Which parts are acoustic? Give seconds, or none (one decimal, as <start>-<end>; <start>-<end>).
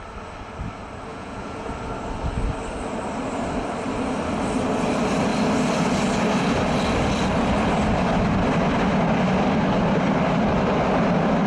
0.0-1.1; 1.7-11.5